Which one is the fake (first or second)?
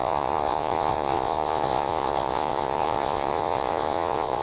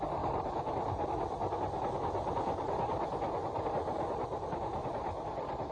first